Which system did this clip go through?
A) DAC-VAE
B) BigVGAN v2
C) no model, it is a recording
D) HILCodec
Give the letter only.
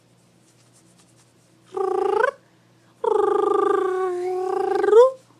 C